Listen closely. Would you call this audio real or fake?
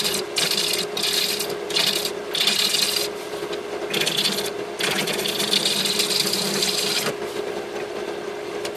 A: real